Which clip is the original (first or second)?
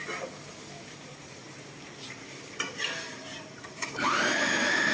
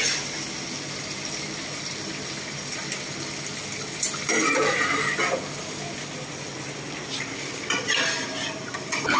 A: second